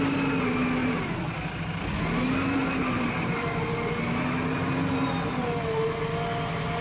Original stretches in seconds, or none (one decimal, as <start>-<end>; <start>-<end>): 0.0-0.8; 2.0-2.6; 3.6-6.8